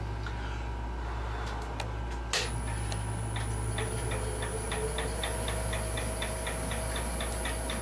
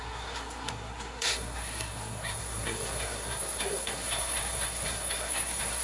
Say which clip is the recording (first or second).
first